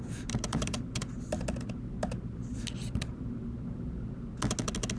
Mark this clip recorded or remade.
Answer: recorded